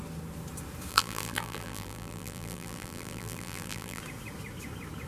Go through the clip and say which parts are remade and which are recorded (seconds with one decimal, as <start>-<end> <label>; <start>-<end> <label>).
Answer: 0.0-0.9 recorded; 0.9-4.0 remade; 4.0-5.1 recorded